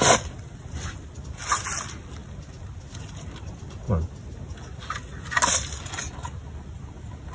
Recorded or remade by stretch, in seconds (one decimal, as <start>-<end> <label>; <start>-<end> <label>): 0.0-7.3 recorded